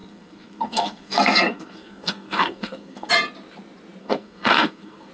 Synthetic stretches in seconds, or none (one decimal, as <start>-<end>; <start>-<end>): 0.0-3.1; 4.0-5.1